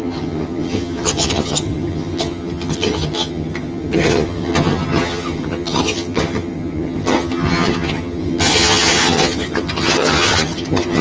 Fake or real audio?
fake